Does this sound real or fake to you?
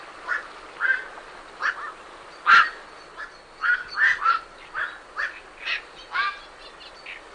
real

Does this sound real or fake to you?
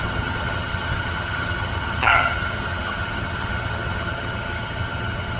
fake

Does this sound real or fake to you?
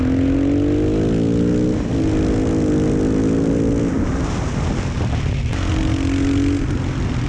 real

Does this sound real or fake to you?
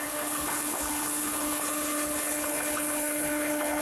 fake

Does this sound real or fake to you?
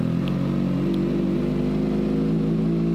real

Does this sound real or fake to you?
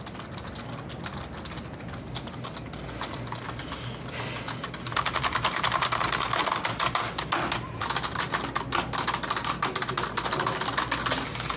real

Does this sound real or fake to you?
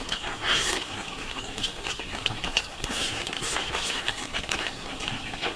fake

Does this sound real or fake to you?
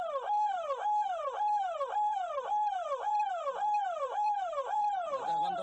fake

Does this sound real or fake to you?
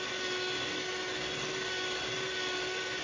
real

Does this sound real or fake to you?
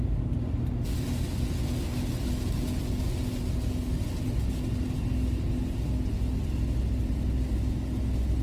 real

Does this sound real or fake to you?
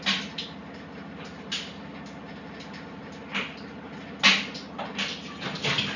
real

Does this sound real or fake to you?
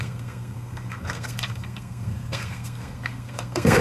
fake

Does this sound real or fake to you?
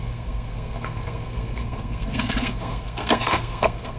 fake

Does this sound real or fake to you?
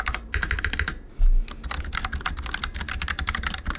real